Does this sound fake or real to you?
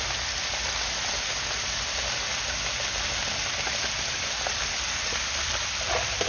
real